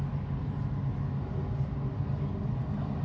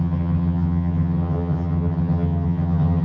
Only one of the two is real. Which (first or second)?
first